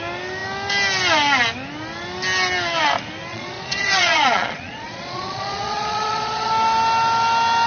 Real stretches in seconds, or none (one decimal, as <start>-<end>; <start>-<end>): 0.0-3.3; 6.5-7.7